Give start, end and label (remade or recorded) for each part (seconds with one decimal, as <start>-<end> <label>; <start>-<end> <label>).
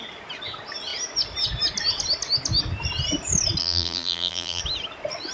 0.0-3.6 recorded; 3.6-4.6 remade; 4.6-5.3 recorded